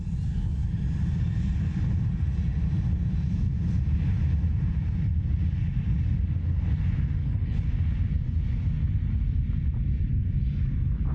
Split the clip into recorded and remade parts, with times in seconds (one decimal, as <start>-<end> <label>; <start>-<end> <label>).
0.0-7.2 recorded; 7.2-7.7 remade; 7.7-11.1 recorded